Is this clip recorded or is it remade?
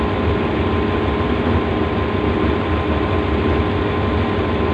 recorded